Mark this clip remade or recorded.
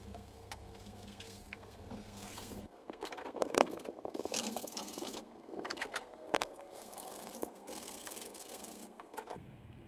remade